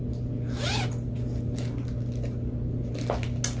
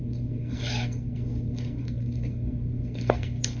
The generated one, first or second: second